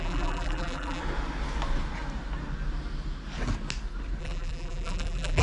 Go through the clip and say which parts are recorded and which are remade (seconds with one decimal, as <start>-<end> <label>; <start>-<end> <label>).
0.0-1.0 remade; 1.0-4.2 recorded; 4.2-5.4 remade